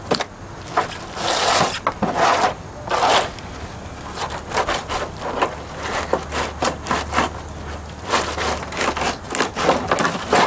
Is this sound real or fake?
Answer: real